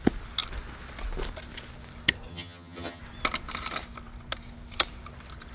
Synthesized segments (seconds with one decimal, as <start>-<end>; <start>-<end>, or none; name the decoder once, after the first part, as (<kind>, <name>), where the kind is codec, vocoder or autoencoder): 2.3-3.0 (vocoder, HiFi-GAN)